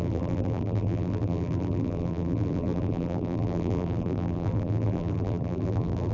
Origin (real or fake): fake